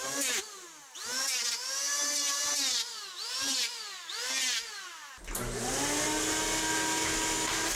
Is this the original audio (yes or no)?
yes